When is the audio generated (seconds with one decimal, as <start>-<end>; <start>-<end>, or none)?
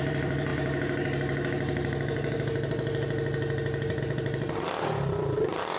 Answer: 0.0-0.5; 4.0-5.8